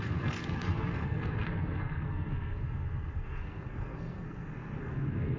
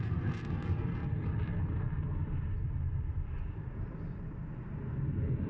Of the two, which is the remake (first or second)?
first